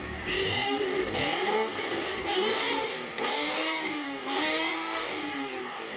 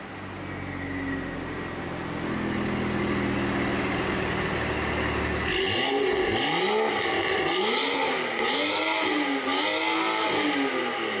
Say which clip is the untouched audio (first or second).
second